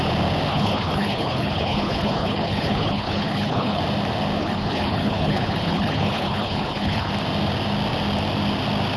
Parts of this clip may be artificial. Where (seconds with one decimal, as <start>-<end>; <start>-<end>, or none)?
0.5-3.8; 4.4-7.1